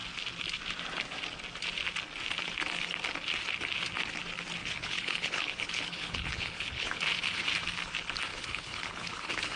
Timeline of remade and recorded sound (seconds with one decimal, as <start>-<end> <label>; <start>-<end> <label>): 0.0-4.6 recorded; 4.6-7.0 remade; 7.0-8.3 recorded; 8.3-9.6 remade